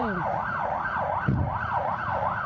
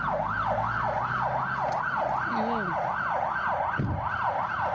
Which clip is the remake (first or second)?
first